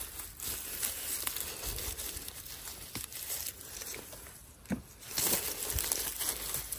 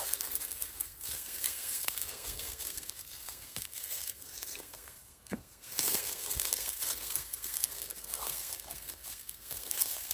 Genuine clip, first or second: first